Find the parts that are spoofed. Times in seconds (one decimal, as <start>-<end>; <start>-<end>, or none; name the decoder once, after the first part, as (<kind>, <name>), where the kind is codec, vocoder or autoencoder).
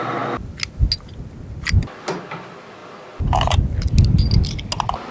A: none